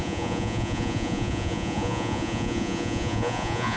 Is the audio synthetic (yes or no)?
yes